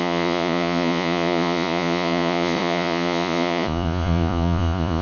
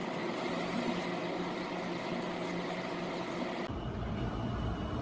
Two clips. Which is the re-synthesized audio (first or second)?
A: first